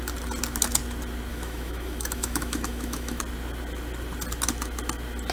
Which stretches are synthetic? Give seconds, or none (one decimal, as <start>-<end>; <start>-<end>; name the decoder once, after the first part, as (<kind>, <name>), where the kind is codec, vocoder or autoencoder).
1.3-3.2 (autoencoder, DAC-VAE)